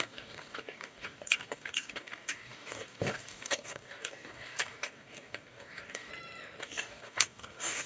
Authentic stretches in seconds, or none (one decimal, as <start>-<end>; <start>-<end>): 6.1-6.6